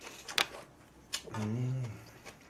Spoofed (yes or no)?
no